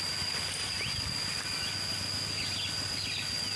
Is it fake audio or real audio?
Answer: real